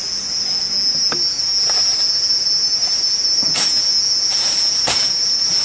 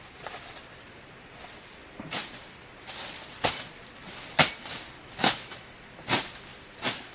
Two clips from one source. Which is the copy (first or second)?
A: second